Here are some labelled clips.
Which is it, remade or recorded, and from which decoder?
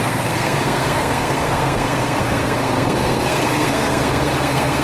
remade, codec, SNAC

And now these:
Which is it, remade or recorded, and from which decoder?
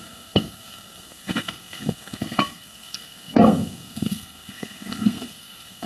remade, codec, SNAC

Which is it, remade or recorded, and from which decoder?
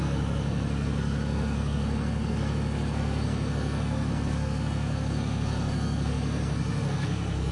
remade, codec, SNAC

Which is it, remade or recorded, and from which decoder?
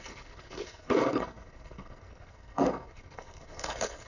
remade, codec, SNAC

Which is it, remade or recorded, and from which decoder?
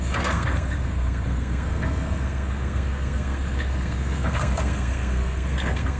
remade, codec, SNAC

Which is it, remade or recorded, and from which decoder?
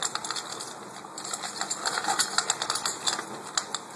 recorded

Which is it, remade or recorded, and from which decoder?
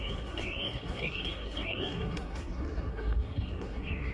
remade, codec, SNAC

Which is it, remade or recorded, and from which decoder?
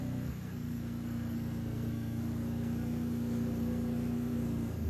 remade, codec, SNAC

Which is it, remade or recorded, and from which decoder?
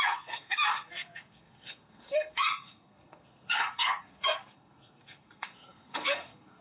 remade, codec, SNAC